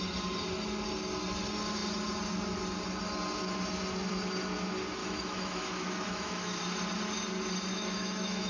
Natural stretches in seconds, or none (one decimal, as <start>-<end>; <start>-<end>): 0.0-5.0; 6.6-7.7